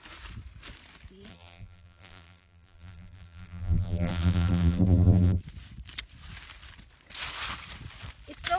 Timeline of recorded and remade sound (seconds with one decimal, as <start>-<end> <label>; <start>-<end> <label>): 0.0-1.3 recorded; 1.3-5.4 remade; 5.4-8.6 recorded